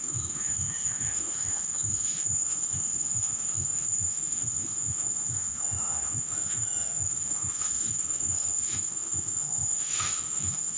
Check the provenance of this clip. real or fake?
fake